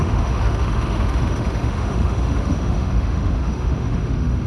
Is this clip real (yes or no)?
no